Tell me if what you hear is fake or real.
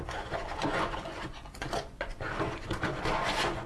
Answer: fake